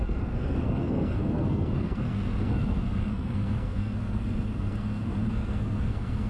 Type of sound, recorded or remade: remade